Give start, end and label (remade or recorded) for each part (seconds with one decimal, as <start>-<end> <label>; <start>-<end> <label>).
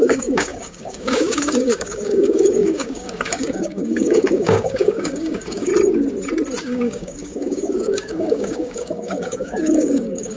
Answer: 0.0-5.7 remade; 5.7-6.6 recorded; 6.6-10.4 remade